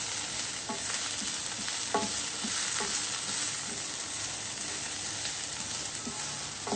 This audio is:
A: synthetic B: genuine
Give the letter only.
B